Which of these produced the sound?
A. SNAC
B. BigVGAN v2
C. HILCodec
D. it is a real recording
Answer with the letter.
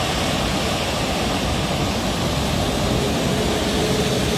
D